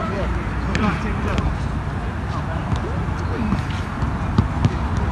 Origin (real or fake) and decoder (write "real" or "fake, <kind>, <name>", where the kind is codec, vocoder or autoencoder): real